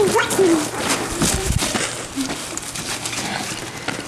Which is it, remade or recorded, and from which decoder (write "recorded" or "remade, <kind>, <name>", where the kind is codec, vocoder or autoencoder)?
recorded